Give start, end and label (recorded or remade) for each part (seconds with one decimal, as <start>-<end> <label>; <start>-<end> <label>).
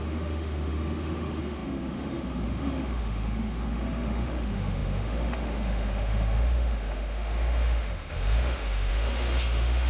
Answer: 0.0-9.9 remade